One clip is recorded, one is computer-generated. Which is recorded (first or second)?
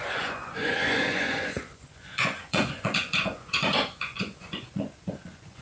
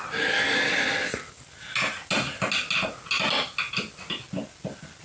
second